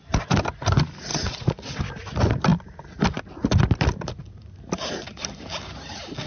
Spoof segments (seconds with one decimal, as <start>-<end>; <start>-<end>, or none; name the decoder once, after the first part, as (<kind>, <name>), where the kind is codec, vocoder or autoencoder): 1.1-1.8 (vocoder, WaveNeXt)